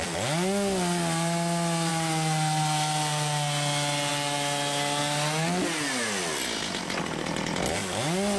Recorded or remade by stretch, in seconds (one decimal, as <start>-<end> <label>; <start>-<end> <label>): 0.0-8.4 recorded